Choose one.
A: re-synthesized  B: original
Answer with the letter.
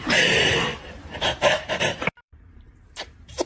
A